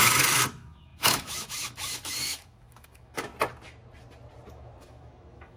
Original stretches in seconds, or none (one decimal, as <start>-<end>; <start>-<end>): 3.3-4.5